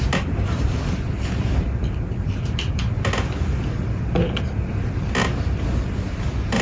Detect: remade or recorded recorded